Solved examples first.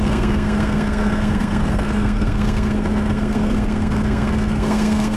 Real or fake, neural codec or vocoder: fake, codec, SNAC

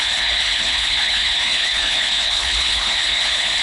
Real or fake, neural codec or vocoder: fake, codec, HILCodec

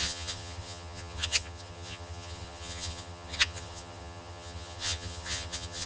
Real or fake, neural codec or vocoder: fake, vocoder, HiFi-GAN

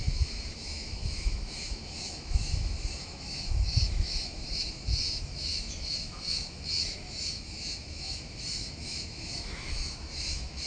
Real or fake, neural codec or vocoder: fake, autoencoder, DAC-VAE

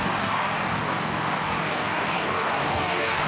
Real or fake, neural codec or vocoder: fake, codec, DAC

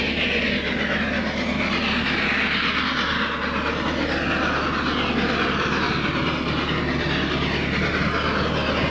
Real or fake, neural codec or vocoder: real